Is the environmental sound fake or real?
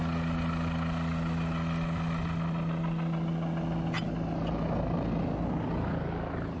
real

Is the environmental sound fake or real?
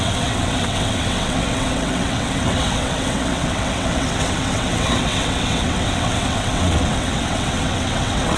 fake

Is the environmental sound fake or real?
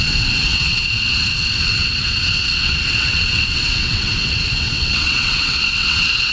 fake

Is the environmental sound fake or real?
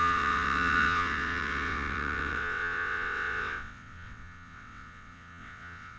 fake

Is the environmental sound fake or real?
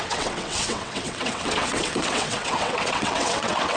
fake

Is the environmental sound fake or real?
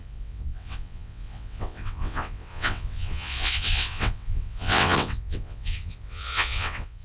fake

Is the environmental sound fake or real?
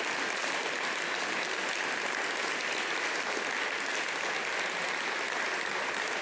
real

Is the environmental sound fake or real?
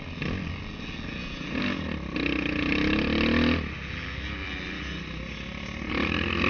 real